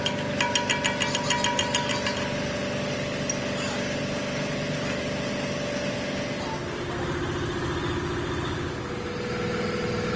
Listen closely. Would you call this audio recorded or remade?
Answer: recorded